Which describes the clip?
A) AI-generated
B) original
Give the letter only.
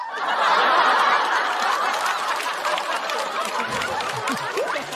B